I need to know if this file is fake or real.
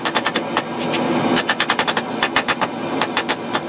real